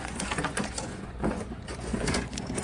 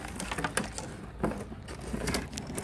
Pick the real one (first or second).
second